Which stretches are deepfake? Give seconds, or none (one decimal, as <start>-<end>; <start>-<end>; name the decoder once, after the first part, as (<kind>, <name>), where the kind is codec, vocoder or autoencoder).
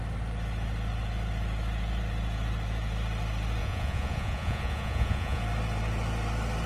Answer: 3.6-5.4 (vocoder, Vocos)